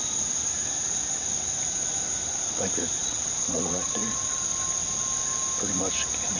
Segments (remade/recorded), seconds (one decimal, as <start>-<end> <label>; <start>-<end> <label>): 0.0-3.0 recorded; 3.0-4.4 remade; 4.4-6.4 recorded